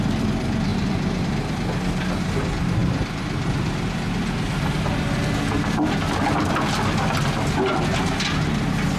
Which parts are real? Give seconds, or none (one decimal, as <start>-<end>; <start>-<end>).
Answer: 0.0-9.0